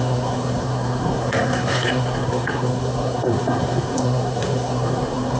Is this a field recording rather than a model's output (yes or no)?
no